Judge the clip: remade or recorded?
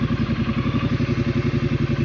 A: recorded